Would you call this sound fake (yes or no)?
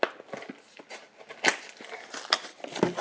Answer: no